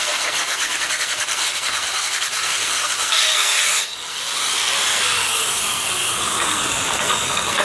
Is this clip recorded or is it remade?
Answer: remade